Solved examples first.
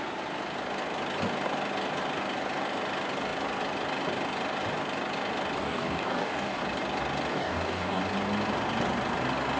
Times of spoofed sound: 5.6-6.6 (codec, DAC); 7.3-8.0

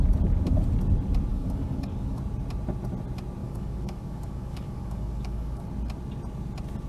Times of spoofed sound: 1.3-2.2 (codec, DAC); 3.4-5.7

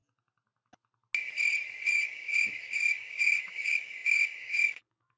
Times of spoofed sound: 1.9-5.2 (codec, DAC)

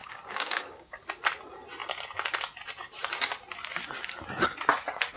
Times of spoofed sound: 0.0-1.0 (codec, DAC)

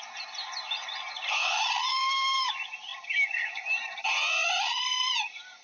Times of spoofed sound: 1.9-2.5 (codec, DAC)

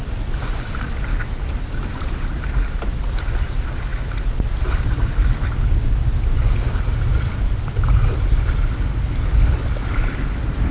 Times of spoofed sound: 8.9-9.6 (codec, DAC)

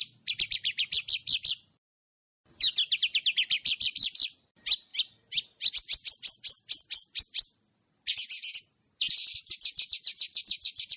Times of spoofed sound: none